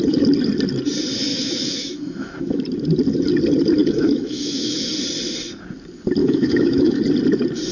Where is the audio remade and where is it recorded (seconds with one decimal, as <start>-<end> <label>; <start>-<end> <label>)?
0.0-1.3 recorded; 1.3-2.6 remade; 2.6-3.8 recorded; 3.8-4.9 remade; 4.9-6.2 recorded; 6.2-7.0 remade; 7.0-7.7 recorded